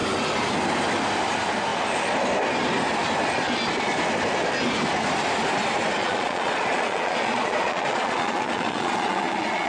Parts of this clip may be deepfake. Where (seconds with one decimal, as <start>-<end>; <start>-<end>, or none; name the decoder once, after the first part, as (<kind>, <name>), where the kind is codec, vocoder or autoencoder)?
6.0-9.7 (vocoder, Vocos)